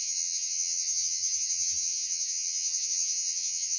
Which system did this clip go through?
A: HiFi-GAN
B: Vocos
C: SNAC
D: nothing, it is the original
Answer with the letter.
A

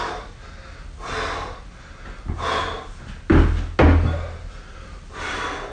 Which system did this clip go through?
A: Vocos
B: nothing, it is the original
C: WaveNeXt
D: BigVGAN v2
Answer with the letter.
B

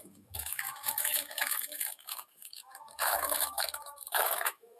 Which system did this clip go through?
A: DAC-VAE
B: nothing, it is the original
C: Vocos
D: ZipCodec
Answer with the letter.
A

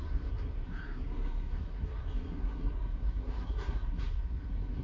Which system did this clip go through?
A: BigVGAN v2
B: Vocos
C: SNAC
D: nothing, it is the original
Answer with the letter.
C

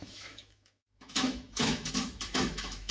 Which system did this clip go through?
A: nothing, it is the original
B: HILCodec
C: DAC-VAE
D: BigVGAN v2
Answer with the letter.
C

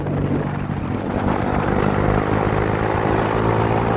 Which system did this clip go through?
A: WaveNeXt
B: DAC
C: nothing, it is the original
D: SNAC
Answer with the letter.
C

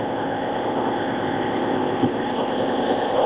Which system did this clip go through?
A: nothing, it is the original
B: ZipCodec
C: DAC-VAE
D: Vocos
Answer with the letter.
B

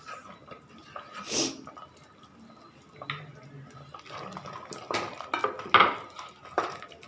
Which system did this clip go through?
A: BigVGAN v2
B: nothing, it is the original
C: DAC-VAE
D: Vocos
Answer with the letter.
B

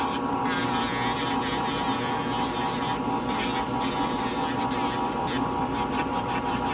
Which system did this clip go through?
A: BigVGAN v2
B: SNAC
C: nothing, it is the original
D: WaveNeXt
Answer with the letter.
C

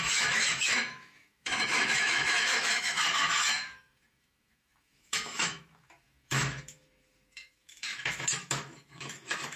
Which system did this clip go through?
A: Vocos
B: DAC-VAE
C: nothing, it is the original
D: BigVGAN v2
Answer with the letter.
B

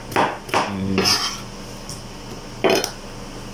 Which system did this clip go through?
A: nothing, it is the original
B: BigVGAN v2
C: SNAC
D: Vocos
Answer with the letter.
A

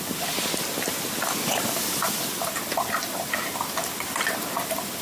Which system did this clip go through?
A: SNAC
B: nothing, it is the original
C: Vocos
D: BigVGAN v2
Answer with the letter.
B